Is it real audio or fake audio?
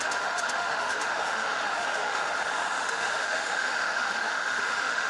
fake